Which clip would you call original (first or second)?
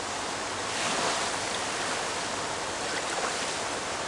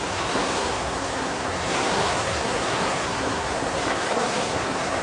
first